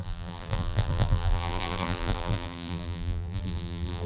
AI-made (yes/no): yes